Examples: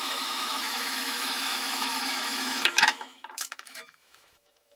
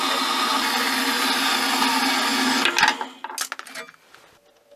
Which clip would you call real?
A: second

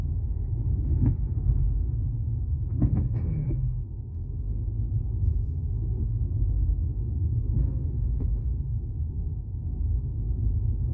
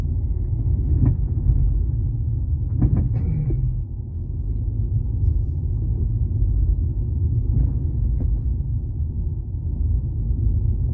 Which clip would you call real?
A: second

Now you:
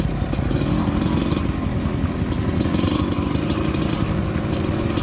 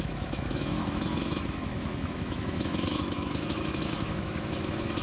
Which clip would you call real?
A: first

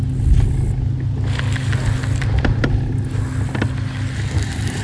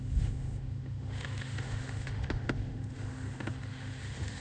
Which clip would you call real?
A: first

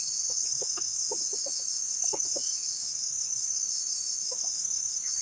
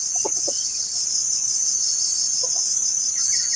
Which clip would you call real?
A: second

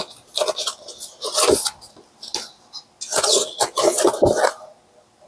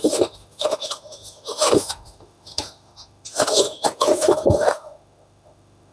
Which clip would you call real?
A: first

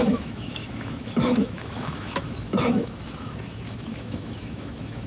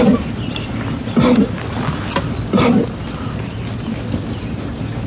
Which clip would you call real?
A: second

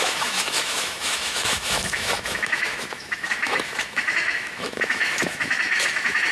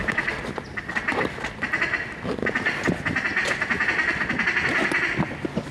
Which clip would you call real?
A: second